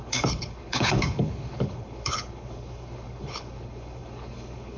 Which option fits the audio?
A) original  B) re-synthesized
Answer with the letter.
B